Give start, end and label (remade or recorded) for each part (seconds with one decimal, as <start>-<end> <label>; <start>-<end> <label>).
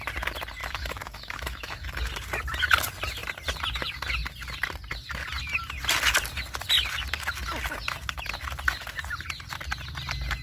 0.0-0.6 recorded; 0.6-2.0 remade; 2.0-10.4 recorded